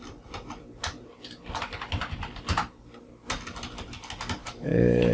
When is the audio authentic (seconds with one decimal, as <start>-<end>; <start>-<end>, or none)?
0.0-4.4